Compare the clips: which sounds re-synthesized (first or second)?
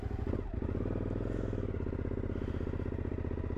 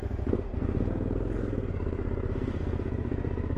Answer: second